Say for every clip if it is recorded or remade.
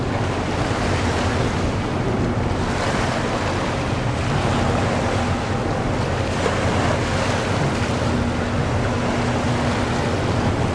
recorded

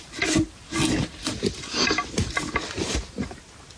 recorded